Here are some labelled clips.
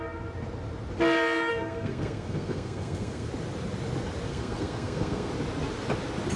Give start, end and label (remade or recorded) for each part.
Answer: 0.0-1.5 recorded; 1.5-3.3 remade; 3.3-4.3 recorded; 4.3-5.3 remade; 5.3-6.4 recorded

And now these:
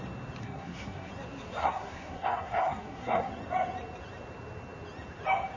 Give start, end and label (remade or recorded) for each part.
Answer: 0.0-0.4 recorded; 0.4-1.1 remade; 1.1-1.6 recorded; 1.6-3.3 remade; 3.3-5.6 recorded

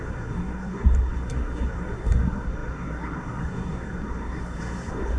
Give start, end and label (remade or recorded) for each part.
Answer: 0.0-5.2 remade

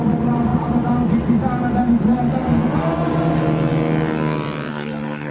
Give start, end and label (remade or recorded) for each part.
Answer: 0.0-4.7 recorded; 4.7-5.3 remade

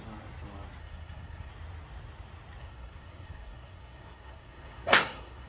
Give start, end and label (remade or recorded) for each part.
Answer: 0.0-0.8 recorded; 0.8-1.5 remade; 1.5-2.6 recorded; 2.6-5.5 remade

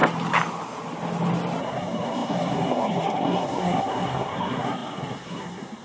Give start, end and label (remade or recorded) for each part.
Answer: 0.0-1.6 recorded; 1.6-5.8 remade

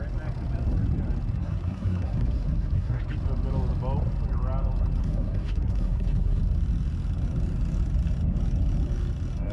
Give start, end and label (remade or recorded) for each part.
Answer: 0.0-1.4 recorded; 1.4-3.0 remade; 3.0-5.0 recorded; 5.0-6.4 remade; 6.4-9.5 recorded